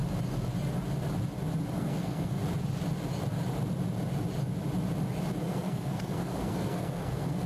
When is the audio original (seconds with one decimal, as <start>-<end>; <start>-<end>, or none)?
0.0-1.8; 2.4-5.4